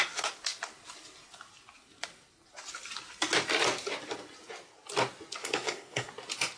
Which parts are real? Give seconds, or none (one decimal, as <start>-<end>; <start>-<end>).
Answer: 0.0-5.4; 6.1-6.6